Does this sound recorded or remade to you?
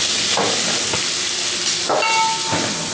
recorded